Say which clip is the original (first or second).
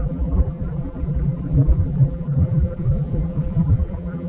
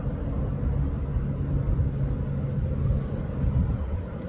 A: second